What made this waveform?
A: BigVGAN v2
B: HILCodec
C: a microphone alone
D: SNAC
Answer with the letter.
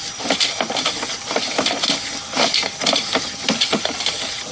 C